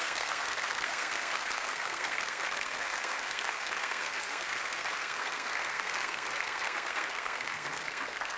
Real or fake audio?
fake